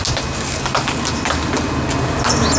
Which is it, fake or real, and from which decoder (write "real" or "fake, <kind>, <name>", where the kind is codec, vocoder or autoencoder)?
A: real